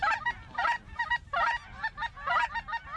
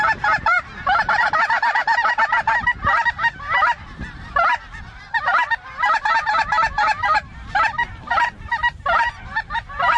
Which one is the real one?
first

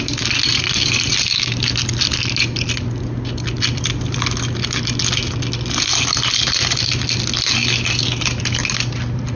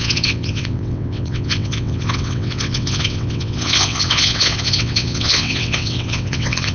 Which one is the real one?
first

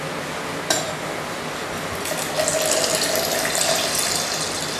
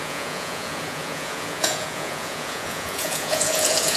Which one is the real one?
first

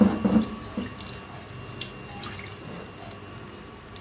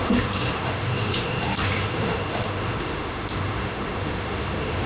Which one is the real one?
first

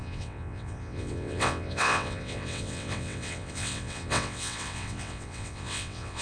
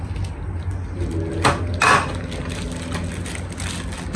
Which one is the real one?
second